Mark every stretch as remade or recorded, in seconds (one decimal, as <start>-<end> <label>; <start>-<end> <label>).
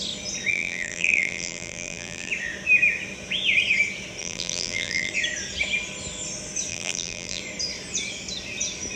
0.0-0.5 recorded; 0.5-2.3 remade; 2.3-4.2 recorded; 4.2-5.1 remade; 5.1-6.7 recorded; 6.7-7.4 remade; 7.4-9.0 recorded